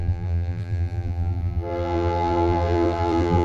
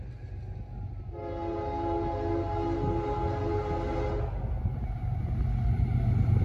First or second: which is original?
second